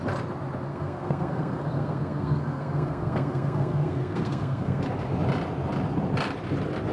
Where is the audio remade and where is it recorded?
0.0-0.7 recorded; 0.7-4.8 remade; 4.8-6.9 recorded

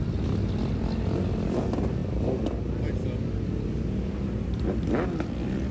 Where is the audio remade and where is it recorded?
0.0-5.7 recorded

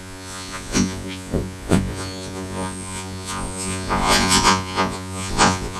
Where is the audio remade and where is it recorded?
0.0-5.8 remade

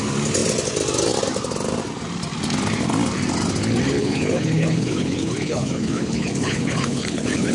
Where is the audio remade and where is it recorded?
0.0-4.0 recorded; 4.0-7.5 remade

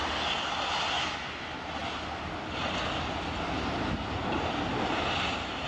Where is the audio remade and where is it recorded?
0.0-5.7 recorded

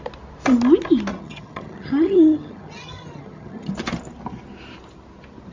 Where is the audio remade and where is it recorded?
0.0-1.1 recorded; 1.1-3.7 remade; 3.7-5.5 recorded

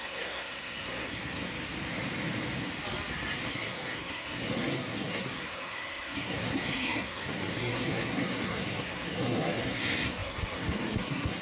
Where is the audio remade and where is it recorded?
0.0-1.5 remade; 1.5-3.5 recorded; 3.5-11.4 remade